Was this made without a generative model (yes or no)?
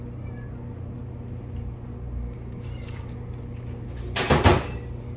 yes